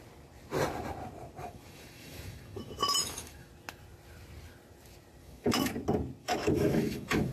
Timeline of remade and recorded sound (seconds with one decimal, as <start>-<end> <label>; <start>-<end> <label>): 0.0-1.4 recorded; 1.4-3.5 remade; 3.5-5.2 recorded; 5.2-5.7 remade; 5.7-6.2 recorded; 6.2-7.3 remade